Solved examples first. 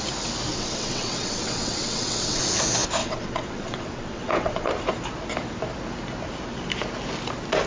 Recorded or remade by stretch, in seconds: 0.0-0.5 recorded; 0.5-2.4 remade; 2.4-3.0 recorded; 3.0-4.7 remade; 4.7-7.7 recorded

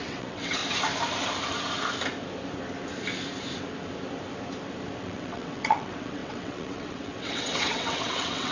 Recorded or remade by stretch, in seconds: 0.0-0.6 remade; 0.6-5.0 recorded; 5.0-8.5 remade

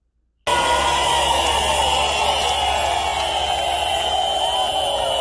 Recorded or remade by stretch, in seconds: 0.0-5.2 recorded

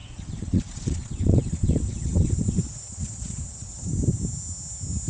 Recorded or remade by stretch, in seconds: 0.0-3.9 remade; 3.9-5.1 recorded